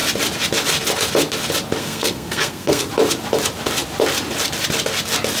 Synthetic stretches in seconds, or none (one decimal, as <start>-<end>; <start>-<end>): 1.8-2.9